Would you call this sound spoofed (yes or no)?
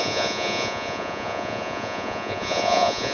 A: yes